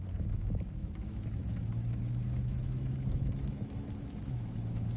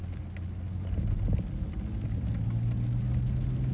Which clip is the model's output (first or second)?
first